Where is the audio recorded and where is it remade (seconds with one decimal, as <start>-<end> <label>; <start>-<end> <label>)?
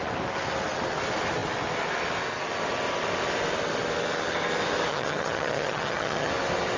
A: 0.0-4.9 recorded; 4.9-6.3 remade; 6.3-6.8 recorded